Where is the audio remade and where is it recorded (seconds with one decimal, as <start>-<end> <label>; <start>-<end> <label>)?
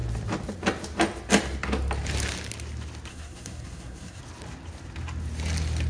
0.0-3.1 recorded; 3.1-4.2 remade; 4.2-5.9 recorded